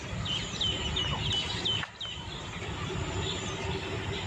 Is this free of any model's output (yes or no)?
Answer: yes